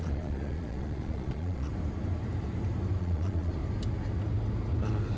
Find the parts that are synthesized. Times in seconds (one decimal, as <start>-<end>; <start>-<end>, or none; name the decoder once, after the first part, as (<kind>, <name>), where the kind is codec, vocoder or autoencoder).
0.0-1.7 (vocoder, Vocos); 3.0-3.6